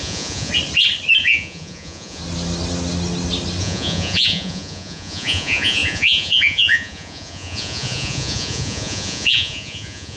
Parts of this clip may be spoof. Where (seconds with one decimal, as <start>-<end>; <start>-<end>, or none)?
0.0-0.5; 1.2-2.2; 3.6-10.2